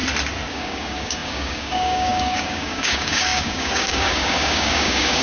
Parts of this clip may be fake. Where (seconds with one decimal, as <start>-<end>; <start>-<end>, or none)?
0.5-5.2

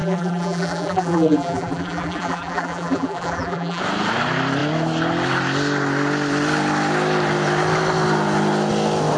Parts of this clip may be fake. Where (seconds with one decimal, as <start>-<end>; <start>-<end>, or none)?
0.0-3.8

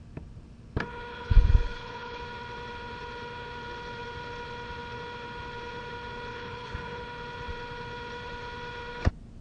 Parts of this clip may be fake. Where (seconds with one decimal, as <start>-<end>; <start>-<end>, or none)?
1.1-2.2; 6.3-7.0

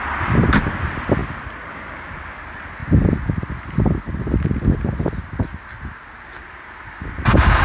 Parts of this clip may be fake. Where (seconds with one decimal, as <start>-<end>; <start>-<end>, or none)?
none

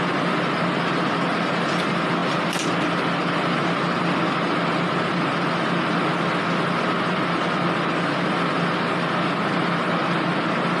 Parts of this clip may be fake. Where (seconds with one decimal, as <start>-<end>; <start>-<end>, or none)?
none

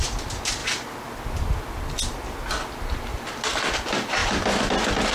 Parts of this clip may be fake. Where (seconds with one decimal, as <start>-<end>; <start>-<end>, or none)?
none